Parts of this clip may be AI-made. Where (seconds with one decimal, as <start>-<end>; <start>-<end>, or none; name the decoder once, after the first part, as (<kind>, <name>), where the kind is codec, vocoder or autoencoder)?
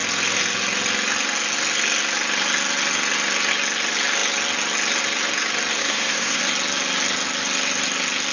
5.8-6.4 (codec, SNAC)